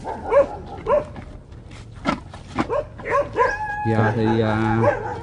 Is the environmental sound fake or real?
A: real